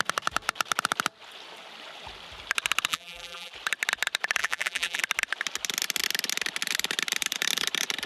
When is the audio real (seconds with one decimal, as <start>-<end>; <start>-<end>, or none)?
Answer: 0.0-2.9; 3.5-4.4; 5.0-8.1